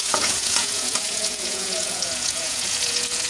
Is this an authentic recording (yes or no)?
no